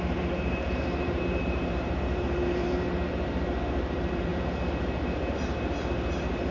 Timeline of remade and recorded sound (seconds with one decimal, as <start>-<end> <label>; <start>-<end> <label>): 0.0-4.3 remade; 4.3-6.1 recorded; 6.1-6.5 remade